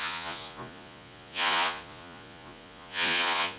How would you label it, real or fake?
fake